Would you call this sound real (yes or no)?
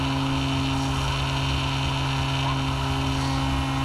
yes